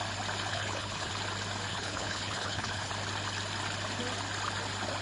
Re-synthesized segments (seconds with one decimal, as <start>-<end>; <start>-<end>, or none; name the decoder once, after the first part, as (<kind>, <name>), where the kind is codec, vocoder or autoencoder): 0.5-1.1 (codec, HILCodec); 1.7-2.9